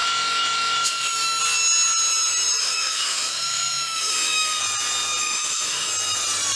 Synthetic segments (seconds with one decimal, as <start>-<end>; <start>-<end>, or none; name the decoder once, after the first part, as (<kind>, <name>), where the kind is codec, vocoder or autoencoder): 0.0-1.4 (autoencoder, DAC-VAE); 2.6-4.6; 5.2-5.9